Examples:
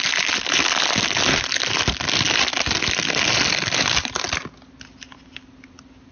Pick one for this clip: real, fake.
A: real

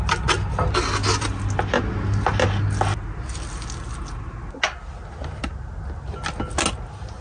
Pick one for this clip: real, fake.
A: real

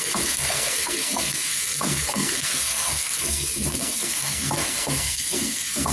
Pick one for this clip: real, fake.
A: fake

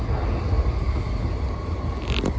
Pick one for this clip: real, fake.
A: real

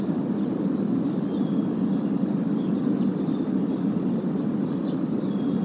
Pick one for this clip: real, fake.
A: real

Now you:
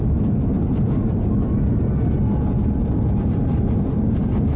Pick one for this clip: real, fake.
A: real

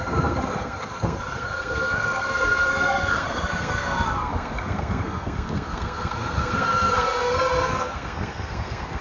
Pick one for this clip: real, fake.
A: fake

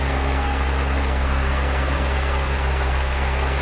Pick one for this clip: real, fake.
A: fake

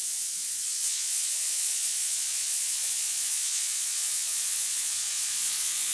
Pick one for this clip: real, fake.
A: fake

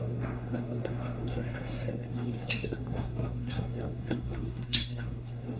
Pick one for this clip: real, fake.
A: fake